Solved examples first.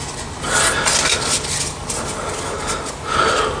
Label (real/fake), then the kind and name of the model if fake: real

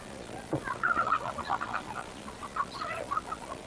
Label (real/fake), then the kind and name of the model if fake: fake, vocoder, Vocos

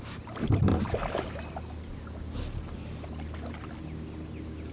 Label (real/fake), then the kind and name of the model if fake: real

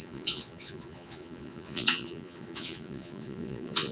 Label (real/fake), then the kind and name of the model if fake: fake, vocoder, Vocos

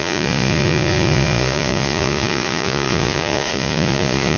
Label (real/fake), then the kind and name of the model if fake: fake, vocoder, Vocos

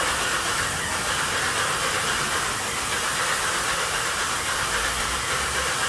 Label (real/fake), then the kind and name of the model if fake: real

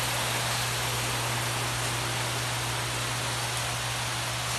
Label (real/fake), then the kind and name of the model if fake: real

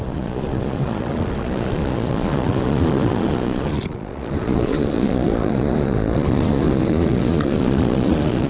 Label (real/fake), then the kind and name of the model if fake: fake, vocoder, Vocos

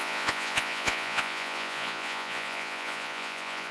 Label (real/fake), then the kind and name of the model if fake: fake, vocoder, Vocos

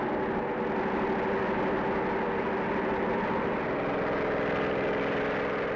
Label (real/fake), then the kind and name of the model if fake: real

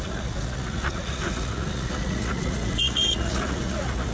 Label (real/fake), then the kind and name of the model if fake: fake, vocoder, Vocos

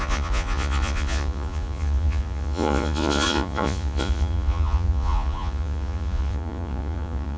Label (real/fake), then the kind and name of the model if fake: fake, vocoder, Vocos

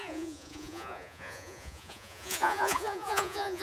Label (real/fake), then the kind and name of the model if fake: fake, vocoder, Vocos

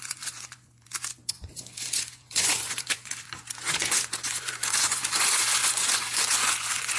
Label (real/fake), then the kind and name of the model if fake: fake, vocoder, Vocos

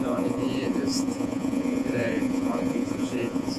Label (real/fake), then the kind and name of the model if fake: fake, vocoder, Vocos